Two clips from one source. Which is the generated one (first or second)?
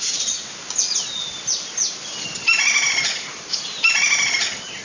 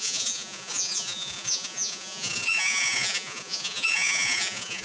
second